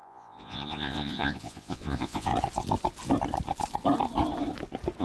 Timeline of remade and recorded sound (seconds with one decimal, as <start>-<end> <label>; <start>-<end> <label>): 0.0-2.3 remade; 2.3-5.0 recorded